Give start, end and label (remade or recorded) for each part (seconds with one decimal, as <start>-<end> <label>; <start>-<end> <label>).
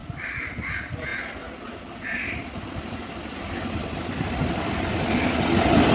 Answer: 0.0-5.9 recorded